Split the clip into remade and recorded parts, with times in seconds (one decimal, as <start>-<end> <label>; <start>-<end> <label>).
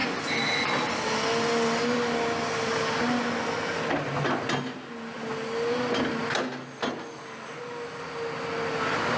0.0-9.2 recorded